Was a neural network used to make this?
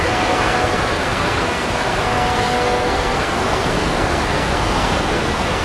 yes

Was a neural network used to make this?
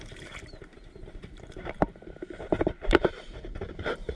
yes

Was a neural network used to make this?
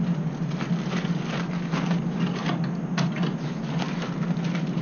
no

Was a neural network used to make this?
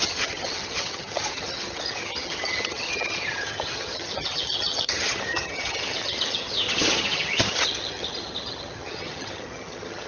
yes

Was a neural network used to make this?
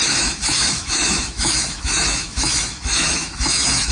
yes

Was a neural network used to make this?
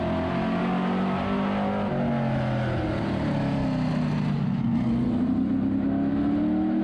no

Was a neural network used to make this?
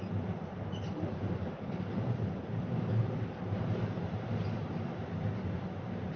no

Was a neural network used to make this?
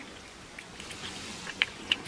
yes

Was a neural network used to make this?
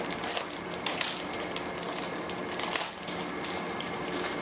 no